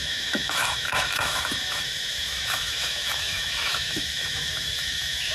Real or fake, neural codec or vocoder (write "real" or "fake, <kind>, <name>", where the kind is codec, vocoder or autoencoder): fake, autoencoder, DAC-VAE